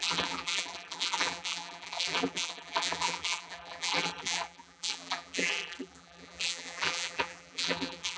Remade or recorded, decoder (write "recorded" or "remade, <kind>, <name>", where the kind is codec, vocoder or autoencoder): remade, vocoder, BigVGAN v2